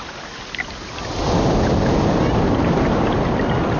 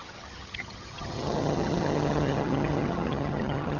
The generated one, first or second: second